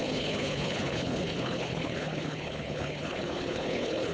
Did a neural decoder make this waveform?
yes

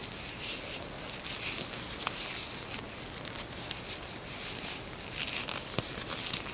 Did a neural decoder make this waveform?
no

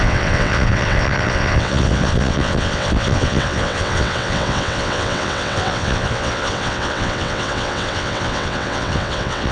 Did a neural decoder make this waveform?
yes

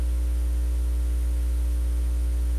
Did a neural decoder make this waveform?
no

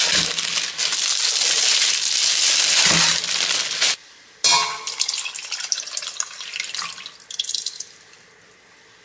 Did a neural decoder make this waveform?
no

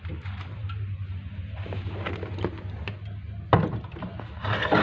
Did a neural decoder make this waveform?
no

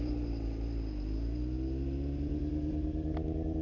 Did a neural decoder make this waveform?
no